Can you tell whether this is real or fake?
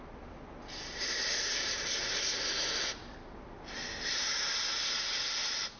real